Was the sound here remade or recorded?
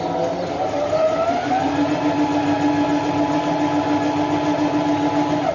recorded